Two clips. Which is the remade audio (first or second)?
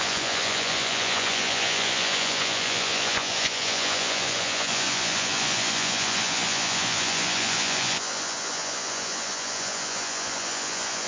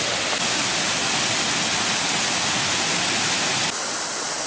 first